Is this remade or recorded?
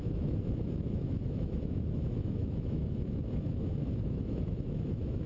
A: remade